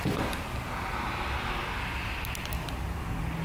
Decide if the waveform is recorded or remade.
recorded